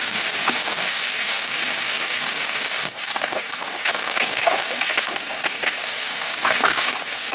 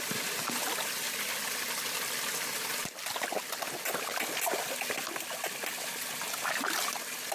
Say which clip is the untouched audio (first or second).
second